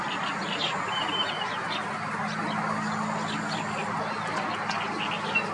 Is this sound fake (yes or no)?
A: no